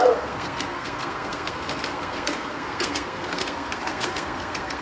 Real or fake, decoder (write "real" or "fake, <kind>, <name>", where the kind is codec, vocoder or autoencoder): fake, codec, SNAC